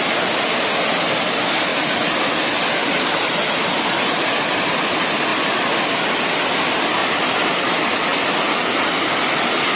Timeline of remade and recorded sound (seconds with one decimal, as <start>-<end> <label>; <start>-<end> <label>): 0.0-7.0 recorded; 7.0-7.6 remade; 7.6-9.8 recorded